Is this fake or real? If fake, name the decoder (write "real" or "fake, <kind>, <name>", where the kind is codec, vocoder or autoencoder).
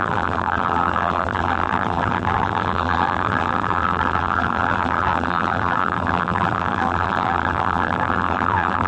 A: fake, vocoder, BigVGAN v2